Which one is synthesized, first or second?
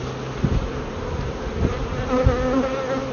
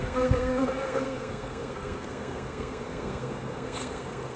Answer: second